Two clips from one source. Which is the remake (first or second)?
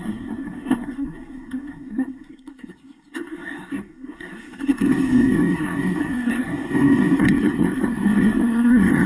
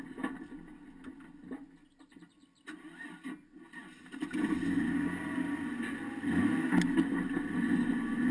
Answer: first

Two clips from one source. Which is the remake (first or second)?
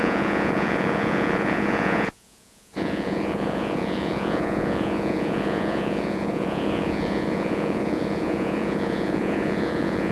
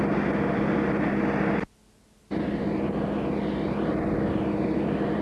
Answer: first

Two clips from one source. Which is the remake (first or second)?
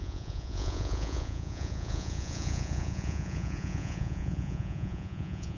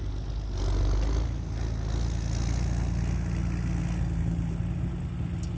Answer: first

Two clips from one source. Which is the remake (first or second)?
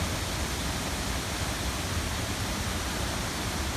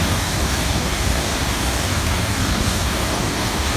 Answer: second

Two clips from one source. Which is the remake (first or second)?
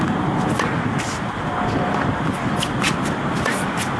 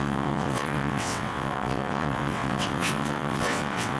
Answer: second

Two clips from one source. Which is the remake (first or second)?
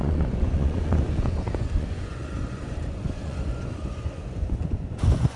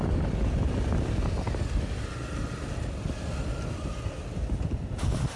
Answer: first